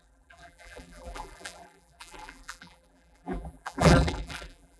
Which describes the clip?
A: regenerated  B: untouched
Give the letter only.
A